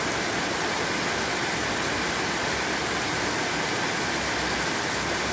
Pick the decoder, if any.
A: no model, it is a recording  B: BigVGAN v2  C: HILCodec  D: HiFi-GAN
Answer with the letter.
A